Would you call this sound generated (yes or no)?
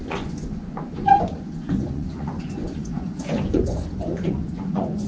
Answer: yes